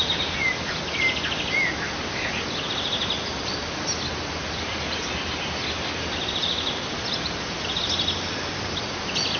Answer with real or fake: real